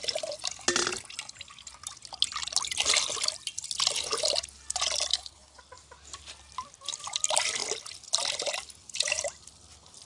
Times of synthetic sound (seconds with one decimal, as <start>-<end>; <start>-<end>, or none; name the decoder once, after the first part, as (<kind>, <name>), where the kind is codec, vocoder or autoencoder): 5.1-5.6 (codec, HILCodec)